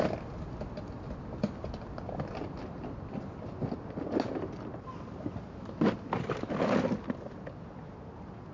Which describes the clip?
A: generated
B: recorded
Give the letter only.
B